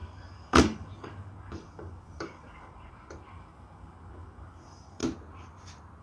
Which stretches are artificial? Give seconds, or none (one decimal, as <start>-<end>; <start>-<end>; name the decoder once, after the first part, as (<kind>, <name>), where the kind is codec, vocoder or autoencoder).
0.0-5.0 (codec, DAC)